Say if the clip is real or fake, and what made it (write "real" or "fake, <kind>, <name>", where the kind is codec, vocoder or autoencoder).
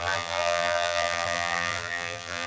fake, vocoder, BigVGAN v2